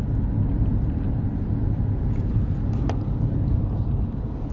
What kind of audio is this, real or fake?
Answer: real